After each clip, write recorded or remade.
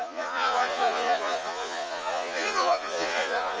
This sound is remade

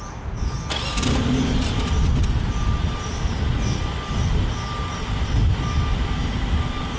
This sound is recorded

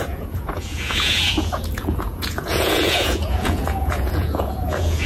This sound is remade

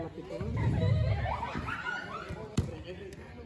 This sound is recorded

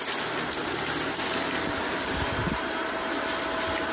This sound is recorded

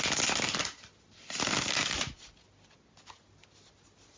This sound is recorded